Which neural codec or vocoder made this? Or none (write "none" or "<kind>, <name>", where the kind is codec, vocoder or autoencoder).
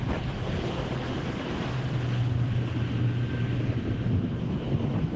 none